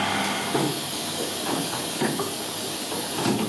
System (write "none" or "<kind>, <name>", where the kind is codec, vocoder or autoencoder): codec, DAC